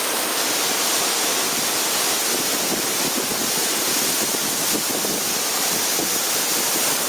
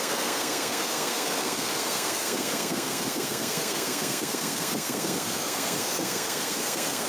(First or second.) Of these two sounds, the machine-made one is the second